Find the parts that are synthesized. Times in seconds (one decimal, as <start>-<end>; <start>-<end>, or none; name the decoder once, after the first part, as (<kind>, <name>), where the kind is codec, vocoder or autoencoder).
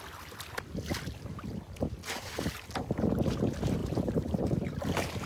2.0-2.7 (vocoder, BigVGAN v2); 3.8-5.3